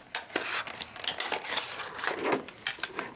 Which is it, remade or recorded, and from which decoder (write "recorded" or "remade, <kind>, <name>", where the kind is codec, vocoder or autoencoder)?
recorded